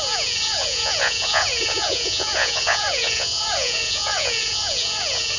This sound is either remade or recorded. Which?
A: remade